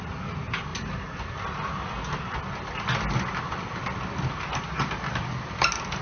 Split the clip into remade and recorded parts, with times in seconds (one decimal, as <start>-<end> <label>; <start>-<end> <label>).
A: 0.0-6.0 recorded